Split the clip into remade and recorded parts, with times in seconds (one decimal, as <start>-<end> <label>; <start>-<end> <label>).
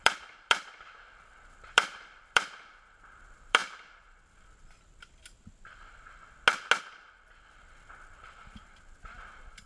0.0-3.6 remade; 3.6-6.8 recorded; 6.8-9.7 remade